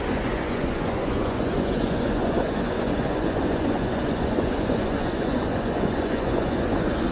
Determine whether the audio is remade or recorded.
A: remade